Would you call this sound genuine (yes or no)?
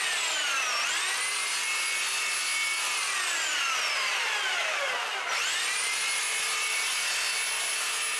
yes